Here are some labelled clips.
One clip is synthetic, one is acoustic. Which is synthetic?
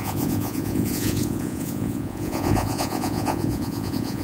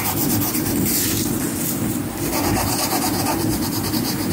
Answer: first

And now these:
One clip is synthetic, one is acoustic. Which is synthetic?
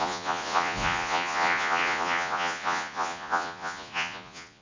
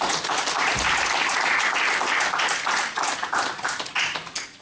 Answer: first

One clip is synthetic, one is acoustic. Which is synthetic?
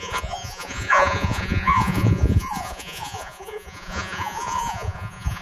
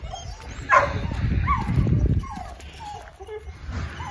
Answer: first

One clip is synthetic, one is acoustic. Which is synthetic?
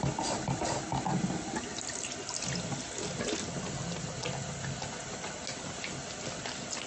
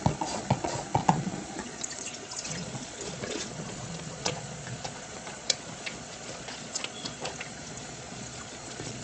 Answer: second